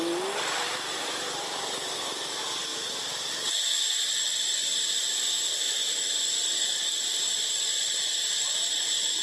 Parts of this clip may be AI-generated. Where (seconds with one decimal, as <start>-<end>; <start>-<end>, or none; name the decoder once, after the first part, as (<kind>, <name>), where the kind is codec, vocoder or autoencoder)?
none